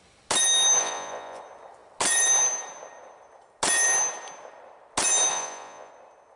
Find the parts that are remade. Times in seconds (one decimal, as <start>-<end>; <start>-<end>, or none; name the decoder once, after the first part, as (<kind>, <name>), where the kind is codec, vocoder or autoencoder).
0.8-1.4 (vocoder, Vocos); 5.3-5.9